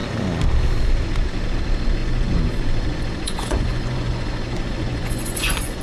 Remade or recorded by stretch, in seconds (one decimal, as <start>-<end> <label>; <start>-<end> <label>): 0.0-2.0 recorded; 2.0-5.8 remade